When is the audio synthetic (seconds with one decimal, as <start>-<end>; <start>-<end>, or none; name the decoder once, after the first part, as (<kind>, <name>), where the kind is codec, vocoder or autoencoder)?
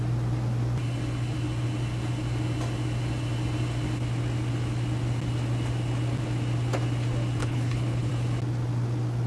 7.4-8.1 (codec, HILCodec)